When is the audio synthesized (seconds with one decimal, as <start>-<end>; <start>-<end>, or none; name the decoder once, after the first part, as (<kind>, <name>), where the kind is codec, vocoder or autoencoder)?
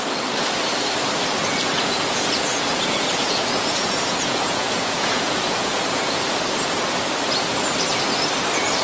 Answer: 1.4-6.2 (vocoder, Vocos)